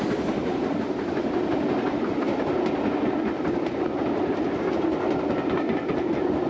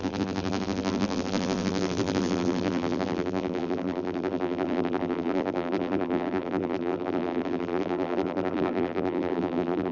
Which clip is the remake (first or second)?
second